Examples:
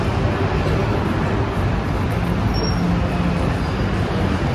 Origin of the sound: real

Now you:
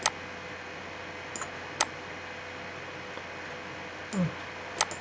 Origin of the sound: real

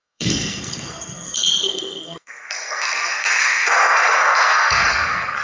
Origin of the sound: fake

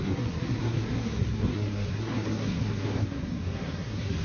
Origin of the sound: fake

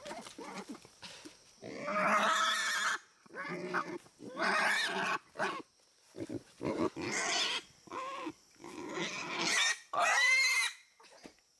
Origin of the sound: real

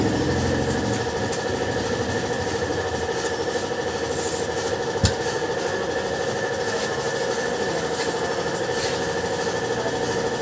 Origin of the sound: real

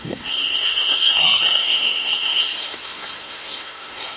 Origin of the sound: fake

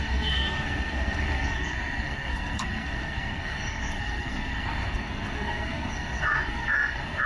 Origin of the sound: fake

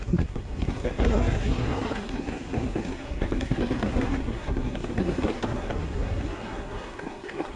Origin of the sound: fake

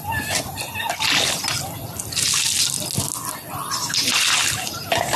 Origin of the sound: real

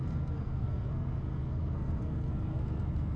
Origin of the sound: fake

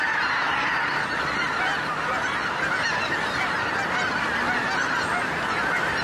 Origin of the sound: real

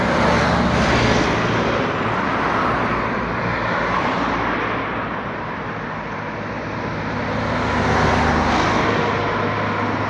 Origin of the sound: real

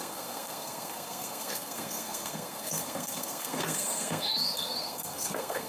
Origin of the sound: fake